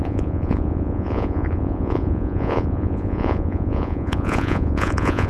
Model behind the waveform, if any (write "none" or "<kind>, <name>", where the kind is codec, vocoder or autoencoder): vocoder, Vocos